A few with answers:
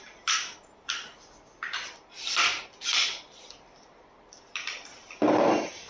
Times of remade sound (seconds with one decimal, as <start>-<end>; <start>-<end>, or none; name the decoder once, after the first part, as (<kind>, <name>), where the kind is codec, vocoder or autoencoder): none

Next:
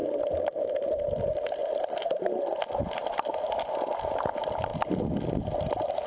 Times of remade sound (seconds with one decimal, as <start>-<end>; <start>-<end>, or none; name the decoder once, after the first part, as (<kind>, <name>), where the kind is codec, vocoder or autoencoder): none

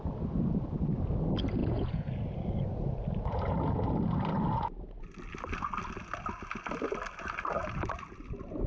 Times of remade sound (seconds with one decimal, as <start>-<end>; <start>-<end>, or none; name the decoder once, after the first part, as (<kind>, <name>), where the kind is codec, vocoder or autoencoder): 1.6-2.2 (vocoder, Vocos)